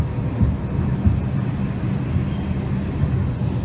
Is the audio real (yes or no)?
yes